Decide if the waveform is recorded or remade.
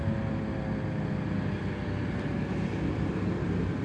recorded